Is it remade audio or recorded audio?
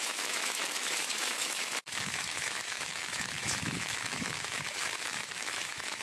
remade